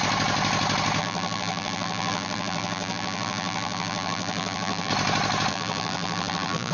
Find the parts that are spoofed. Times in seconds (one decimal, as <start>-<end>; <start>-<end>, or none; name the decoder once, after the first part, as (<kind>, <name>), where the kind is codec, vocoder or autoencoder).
1.0-4.9 (vocoder, BigVGAN v2); 5.5-6.7

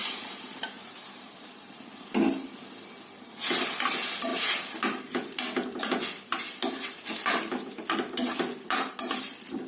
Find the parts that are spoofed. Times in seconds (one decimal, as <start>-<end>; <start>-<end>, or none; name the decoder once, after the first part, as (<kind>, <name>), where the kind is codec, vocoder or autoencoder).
0.0-2.1 (vocoder, BigVGAN v2)

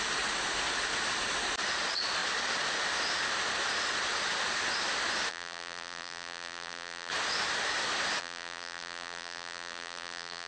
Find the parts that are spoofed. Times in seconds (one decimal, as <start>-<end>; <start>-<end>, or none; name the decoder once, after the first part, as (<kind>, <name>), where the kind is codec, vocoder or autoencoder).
5.3-7.1 (vocoder, BigVGAN v2); 8.2-10.5

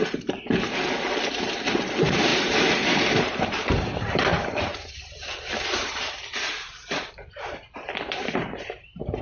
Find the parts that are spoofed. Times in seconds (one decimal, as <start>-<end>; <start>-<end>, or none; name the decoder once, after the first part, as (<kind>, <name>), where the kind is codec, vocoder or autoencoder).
0.0-9.2 (vocoder, BigVGAN v2)

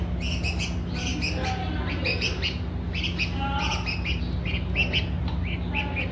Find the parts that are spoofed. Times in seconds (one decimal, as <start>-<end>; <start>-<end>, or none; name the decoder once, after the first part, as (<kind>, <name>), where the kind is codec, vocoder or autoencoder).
none

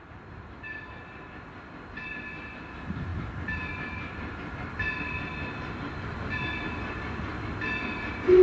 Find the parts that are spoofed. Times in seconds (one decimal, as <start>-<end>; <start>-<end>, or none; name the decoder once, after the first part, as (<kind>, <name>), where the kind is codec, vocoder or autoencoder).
3.1-4.4 (vocoder, BigVGAN v2)